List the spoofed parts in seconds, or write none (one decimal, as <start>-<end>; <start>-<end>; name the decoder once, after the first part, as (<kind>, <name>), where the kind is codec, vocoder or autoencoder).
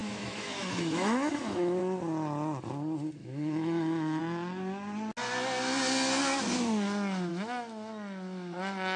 0.0-1.8 (autoencoder, DAC-VAE); 3.2-4.2; 7.3-7.9